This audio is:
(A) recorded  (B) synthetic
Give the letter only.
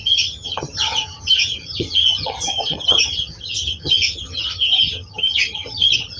B